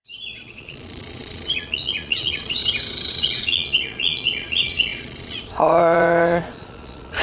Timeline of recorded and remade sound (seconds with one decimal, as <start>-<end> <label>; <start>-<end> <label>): 0.0-2.6 remade; 2.6-3.1 recorded; 3.1-7.2 remade